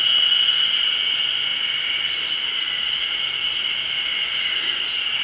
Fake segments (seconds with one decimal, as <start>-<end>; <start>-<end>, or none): none